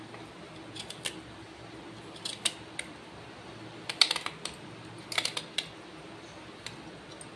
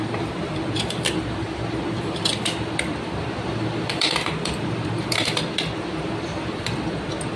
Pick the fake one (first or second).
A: second